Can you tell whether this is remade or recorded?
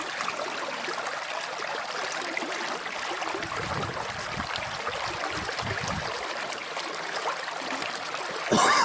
recorded